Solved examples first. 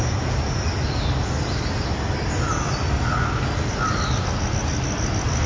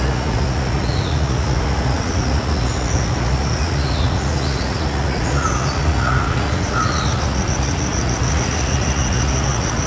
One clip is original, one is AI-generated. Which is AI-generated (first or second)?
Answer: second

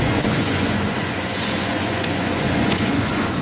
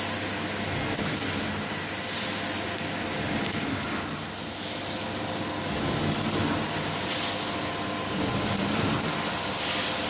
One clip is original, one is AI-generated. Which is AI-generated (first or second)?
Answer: first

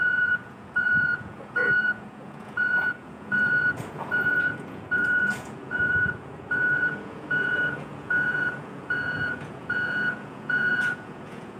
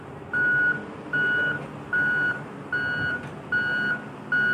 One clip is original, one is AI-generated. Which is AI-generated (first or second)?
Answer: first